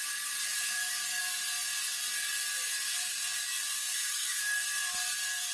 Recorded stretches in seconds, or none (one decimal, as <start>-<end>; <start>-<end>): 0.0-0.5; 1.2-3.9; 4.4-5.5